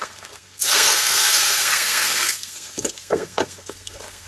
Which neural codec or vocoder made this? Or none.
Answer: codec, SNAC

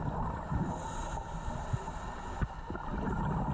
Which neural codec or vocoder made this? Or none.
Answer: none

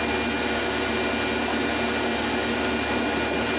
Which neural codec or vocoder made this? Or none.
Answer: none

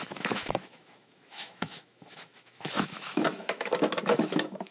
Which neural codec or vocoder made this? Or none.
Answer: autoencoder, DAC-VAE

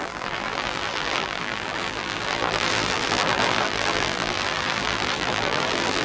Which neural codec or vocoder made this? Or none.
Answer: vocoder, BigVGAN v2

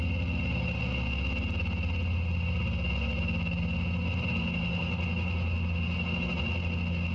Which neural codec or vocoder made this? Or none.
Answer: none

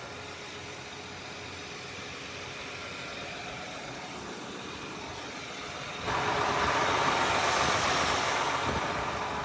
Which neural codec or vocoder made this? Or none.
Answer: none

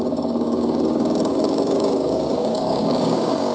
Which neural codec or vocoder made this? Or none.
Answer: codec, DAC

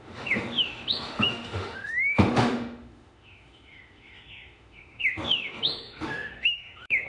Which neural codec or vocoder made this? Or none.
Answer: autoencoder, DAC-VAE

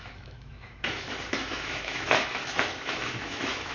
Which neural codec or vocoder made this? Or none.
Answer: autoencoder, DAC-VAE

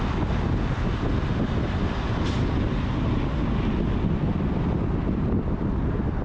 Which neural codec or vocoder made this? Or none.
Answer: none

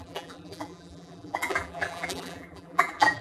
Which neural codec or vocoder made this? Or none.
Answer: vocoder, BigVGAN v2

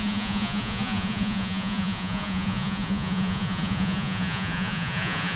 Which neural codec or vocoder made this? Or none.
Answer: vocoder, Vocos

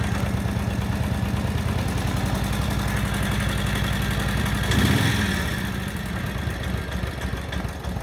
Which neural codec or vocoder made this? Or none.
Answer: none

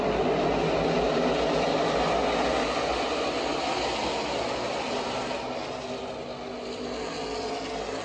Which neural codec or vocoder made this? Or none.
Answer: none